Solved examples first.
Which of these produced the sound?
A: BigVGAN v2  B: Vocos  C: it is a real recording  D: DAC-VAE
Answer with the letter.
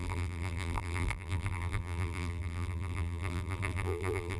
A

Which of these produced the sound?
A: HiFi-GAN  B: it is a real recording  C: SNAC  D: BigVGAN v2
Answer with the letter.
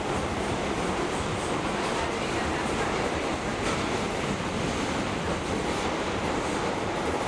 B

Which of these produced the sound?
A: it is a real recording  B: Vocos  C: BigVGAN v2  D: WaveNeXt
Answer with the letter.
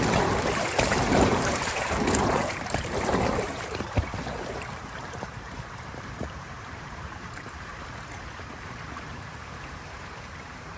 C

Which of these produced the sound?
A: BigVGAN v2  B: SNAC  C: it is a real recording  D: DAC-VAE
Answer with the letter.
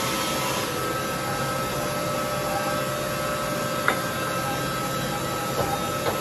C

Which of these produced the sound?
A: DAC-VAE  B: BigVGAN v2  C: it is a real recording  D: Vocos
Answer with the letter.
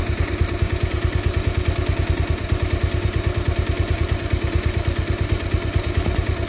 C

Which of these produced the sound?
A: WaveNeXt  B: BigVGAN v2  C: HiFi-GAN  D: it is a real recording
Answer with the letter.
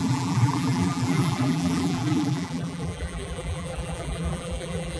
B